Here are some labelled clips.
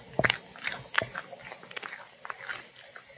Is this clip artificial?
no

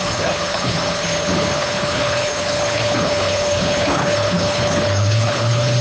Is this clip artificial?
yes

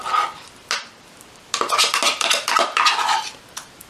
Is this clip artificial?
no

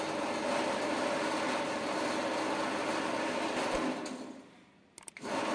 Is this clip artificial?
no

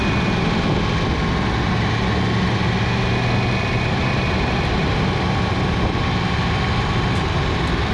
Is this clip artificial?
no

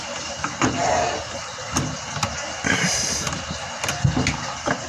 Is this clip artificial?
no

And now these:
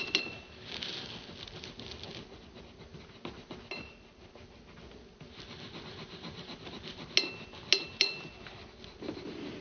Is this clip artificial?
no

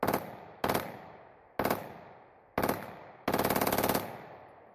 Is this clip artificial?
no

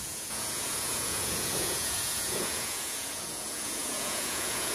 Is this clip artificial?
yes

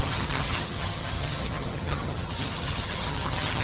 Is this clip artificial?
yes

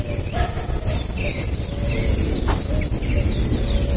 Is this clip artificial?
no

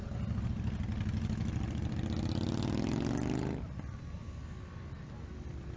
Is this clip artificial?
no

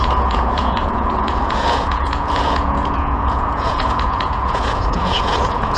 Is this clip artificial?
yes